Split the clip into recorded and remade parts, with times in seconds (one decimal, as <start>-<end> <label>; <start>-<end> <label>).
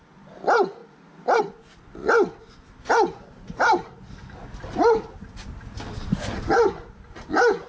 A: 0.0-7.7 recorded